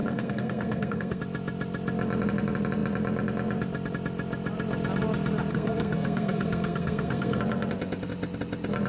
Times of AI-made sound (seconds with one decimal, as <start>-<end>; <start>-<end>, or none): 0.0-1.2; 5.5-7.4